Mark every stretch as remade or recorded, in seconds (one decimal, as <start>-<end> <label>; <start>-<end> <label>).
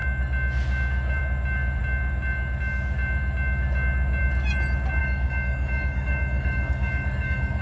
0.0-5.0 recorded; 5.0-7.6 remade